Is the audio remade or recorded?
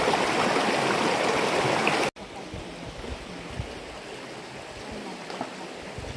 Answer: recorded